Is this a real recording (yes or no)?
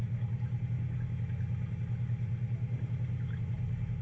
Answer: yes